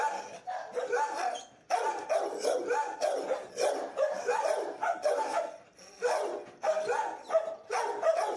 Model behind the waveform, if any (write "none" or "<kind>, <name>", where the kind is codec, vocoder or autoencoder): none